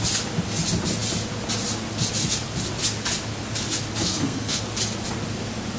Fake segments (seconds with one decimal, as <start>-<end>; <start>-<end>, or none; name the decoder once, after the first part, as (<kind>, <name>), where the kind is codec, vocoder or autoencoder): 4.0-4.6 (codec, SNAC)